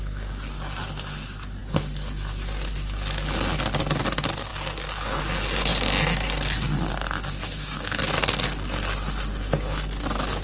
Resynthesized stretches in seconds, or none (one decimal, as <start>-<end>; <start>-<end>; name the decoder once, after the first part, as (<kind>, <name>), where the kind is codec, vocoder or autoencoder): 7.4-8.0 (autoencoder, DAC-VAE)